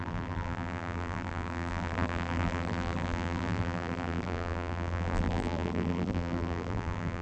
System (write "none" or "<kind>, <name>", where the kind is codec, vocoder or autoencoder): vocoder, BigVGAN v2